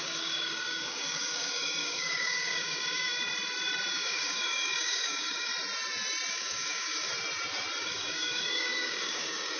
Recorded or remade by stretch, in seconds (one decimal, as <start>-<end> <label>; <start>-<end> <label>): 0.0-3.3 remade; 3.3-3.9 recorded; 3.9-5.5 remade; 5.5-6.3 recorded; 6.3-7.1 remade; 7.1-7.8 recorded; 7.8-9.6 remade